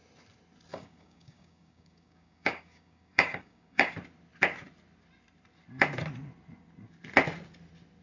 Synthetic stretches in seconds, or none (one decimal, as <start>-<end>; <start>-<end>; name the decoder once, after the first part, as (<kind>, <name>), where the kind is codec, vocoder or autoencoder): 0.7-3.9 (codec, DAC)